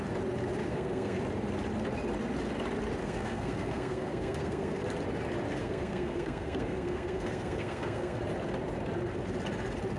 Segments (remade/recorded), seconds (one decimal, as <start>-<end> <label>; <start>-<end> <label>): 0.0-0.6 recorded; 0.6-1.2 remade; 1.2-3.0 recorded; 3.0-4.8 remade; 4.8-5.6 recorded; 5.6-8.2 remade; 8.2-10.0 recorded